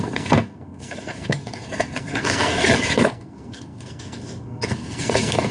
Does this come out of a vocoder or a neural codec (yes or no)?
yes